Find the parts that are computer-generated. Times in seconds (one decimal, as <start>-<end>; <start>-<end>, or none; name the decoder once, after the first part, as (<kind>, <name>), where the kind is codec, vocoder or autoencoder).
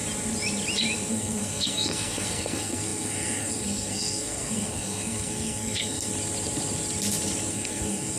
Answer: 1.1-6.1 (codec, SNAC); 7.5-8.2